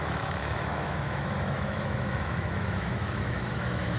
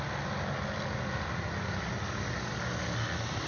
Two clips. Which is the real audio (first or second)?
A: second